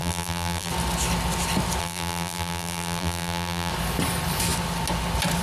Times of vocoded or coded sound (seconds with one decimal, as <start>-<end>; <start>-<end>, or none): 0.0-0.7; 1.8-3.7

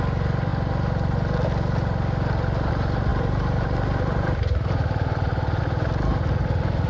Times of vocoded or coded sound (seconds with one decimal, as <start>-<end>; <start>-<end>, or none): 3.1-5.6

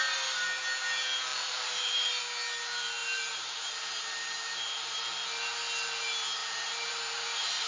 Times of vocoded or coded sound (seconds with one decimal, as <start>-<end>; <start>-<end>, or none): 1.3-2.2; 3.0-5.0; 6.4-7.7

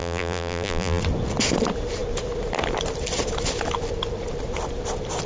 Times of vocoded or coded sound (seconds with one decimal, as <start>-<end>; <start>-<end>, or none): 0.0-1.0

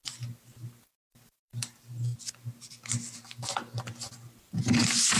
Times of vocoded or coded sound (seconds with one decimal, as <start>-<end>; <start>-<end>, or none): 1.0-4.1

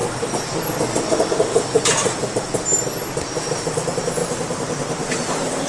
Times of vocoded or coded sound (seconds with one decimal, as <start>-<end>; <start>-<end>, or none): 4.2-5.7